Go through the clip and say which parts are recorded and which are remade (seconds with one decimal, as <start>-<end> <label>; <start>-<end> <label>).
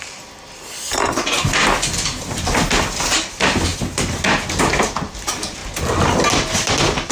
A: 0.0-3.7 remade; 3.7-4.6 recorded; 4.6-5.6 remade; 5.6-6.3 recorded; 6.3-7.1 remade